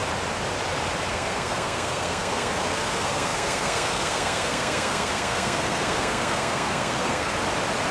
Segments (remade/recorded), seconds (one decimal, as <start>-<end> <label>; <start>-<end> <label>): 0.0-1.1 recorded; 1.1-7.3 remade; 7.3-7.9 recorded